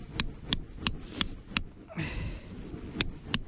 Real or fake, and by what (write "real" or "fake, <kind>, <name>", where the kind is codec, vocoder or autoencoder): real